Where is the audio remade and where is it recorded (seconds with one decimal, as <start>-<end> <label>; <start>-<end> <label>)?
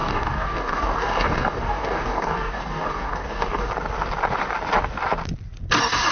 0.0-3.7 remade; 3.7-6.1 recorded